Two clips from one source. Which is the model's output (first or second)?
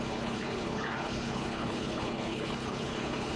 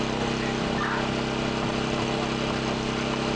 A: first